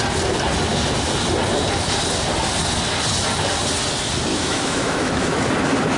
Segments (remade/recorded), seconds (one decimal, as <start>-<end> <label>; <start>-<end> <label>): 0.0-4.3 recorded; 4.3-5.5 remade; 5.5-6.0 recorded